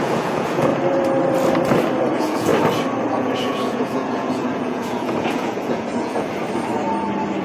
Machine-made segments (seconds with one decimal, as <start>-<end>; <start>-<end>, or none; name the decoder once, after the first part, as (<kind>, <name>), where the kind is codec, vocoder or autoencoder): 0.0-0.7 (vocoder, Vocos); 2.1-2.5; 3.1-6.3